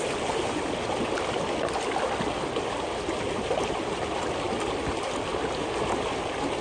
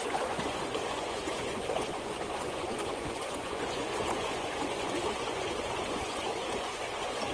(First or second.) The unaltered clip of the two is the first